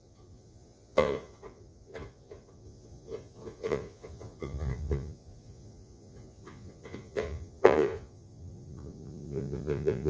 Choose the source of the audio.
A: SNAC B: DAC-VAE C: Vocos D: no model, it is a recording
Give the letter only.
C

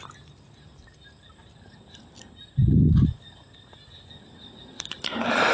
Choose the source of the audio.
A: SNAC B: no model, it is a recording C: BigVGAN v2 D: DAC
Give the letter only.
B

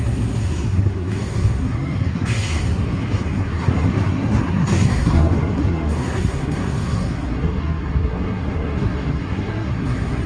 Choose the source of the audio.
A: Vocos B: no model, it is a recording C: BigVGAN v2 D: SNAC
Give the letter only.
D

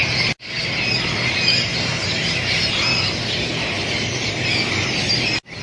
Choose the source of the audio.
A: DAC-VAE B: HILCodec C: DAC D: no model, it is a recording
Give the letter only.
D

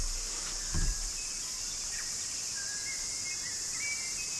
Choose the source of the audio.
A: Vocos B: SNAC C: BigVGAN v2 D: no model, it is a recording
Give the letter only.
D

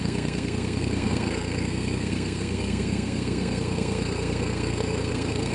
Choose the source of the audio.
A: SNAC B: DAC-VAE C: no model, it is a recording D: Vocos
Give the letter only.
A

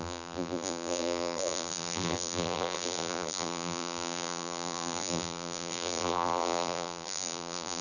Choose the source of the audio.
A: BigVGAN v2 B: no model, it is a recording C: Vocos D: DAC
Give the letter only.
A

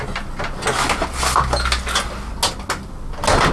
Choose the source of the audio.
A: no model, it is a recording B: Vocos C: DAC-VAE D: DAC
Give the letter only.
A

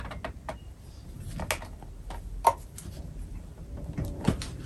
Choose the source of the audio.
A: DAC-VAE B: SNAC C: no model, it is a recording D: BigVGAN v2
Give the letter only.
C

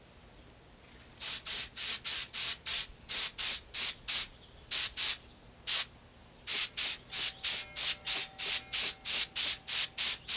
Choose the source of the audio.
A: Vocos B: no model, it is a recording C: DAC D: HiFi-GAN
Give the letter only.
B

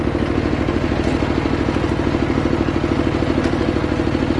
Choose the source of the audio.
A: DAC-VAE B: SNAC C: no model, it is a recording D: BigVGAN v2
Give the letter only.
C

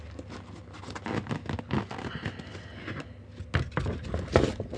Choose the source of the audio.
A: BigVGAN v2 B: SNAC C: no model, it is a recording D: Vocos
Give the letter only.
C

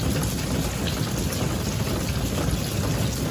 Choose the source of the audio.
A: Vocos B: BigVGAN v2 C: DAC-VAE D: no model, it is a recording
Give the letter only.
D